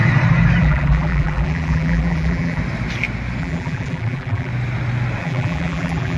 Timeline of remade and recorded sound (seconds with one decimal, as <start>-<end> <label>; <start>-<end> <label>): 0.0-0.6 recorded; 0.6-2.6 remade; 2.6-3.4 recorded; 3.4-4.5 remade; 4.5-5.2 recorded; 5.2-6.2 remade